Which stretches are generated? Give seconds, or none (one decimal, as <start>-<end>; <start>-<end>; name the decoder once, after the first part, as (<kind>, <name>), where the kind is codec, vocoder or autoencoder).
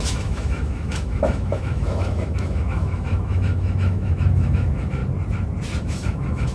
0.0-5.0 (autoencoder, DAC-VAE); 5.8-6.5